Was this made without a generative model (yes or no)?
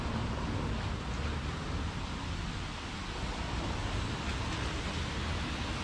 yes